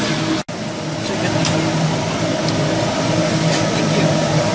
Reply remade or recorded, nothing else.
recorded